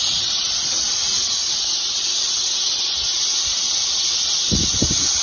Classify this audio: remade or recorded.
recorded